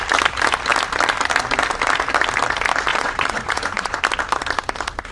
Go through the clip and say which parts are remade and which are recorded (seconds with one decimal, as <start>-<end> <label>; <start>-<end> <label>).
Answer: 0.0-2.9 recorded; 2.9-4.0 remade; 4.0-5.1 recorded